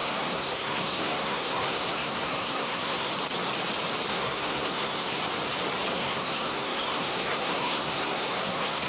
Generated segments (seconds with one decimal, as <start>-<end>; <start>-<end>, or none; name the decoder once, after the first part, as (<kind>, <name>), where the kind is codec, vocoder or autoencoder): 0.0-3.1 (codec, SNAC); 4.1-5.2; 5.9-8.9